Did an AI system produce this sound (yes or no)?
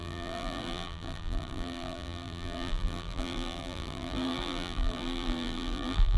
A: yes